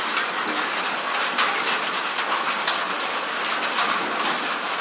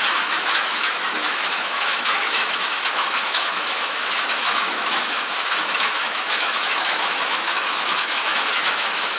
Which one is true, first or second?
first